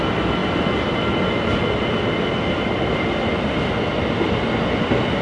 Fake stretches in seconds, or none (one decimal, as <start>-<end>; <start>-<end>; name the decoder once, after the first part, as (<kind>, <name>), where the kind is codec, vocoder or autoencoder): none